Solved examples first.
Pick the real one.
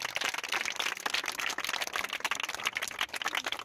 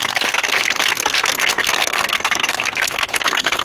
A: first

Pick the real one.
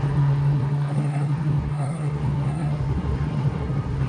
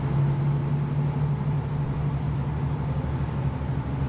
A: second